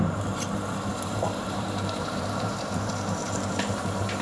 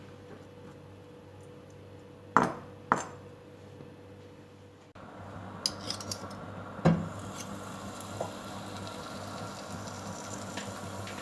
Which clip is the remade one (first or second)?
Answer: first